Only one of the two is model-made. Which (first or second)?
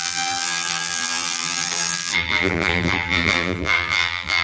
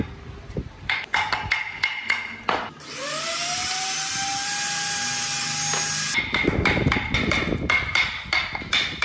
first